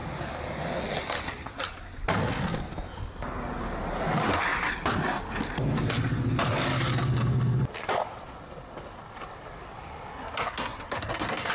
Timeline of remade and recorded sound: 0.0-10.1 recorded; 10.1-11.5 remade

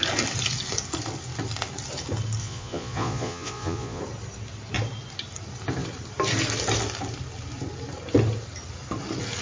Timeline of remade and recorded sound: 0.0-2.4 recorded; 2.4-4.0 remade; 4.0-9.4 recorded

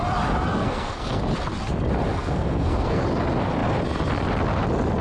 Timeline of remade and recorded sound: 0.0-0.5 recorded; 0.5-1.2 remade; 1.2-2.1 recorded; 2.1-3.0 remade; 3.0-5.0 recorded

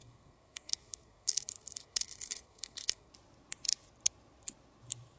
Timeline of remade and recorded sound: 0.0-3.1 remade; 3.1-5.2 recorded

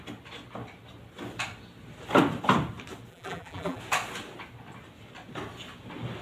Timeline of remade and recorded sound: 0.0-3.1 recorded; 3.1-3.8 remade; 3.8-6.2 recorded